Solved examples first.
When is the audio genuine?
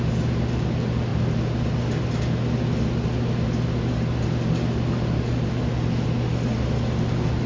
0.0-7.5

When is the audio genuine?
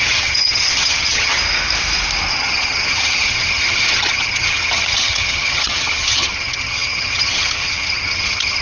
1.4-2.3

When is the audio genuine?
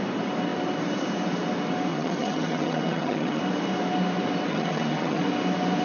0.0-1.9; 3.4-4.5; 5.2-5.8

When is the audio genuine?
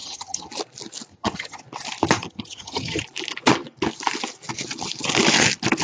0.5-1.1; 1.6-2.2; 3.0-5.8